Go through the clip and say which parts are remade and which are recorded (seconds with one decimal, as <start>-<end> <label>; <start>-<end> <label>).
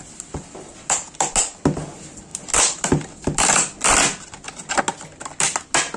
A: 0.0-6.0 recorded